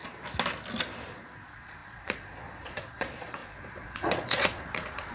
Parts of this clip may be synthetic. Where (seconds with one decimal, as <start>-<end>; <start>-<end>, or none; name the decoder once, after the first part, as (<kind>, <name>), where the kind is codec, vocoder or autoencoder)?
1.1-5.1 (vocoder, Vocos)